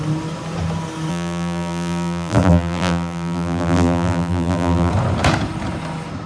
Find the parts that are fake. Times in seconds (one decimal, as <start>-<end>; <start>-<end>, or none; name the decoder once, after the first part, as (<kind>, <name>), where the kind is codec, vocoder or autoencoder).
1.1-4.9 (vocoder, BigVGAN v2)